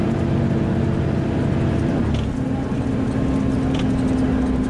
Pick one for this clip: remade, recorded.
recorded